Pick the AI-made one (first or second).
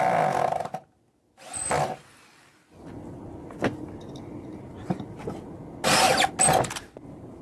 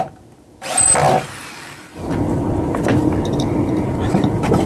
second